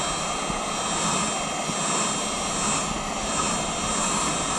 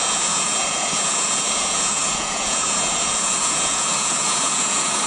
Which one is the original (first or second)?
first